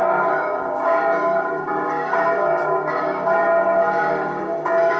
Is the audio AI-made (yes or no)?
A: yes